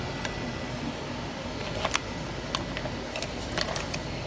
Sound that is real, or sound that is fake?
real